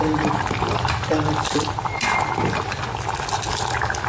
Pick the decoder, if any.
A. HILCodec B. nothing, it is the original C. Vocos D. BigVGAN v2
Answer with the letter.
B